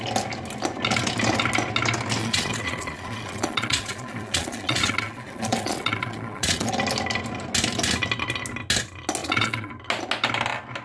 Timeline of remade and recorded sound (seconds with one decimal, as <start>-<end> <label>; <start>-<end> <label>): 0.0-2.2 recorded; 2.2-6.7 remade; 6.7-9.2 recorded; 9.2-9.7 remade; 9.7-10.8 recorded